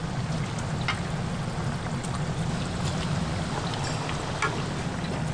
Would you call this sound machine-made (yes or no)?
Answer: no